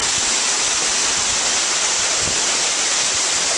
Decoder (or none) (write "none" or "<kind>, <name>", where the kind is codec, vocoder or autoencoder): none